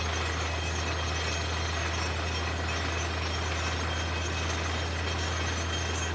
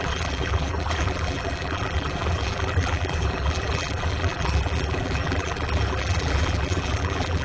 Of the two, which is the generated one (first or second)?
second